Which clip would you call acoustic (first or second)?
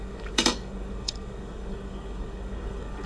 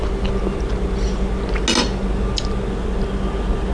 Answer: second